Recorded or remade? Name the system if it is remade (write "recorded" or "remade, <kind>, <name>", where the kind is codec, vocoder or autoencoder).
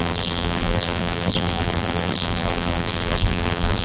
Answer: remade, vocoder, BigVGAN v2